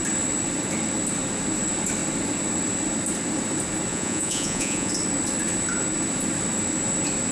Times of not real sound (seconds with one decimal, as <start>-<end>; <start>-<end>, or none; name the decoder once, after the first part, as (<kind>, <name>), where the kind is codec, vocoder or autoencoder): 3.9-4.9 (vocoder, Vocos)